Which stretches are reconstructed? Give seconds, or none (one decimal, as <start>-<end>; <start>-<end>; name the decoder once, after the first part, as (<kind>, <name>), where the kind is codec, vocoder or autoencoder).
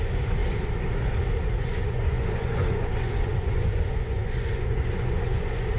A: 0.0-0.4 (vocoder, Vocos); 1.6-5.8